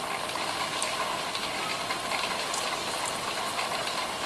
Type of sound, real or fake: real